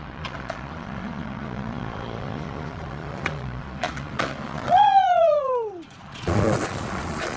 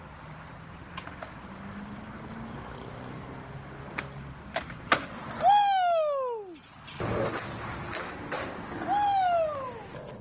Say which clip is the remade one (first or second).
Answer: first